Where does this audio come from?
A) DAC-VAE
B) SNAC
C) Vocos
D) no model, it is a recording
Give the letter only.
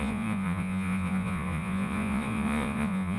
C